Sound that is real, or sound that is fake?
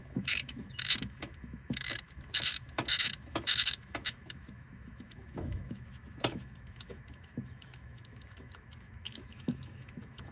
fake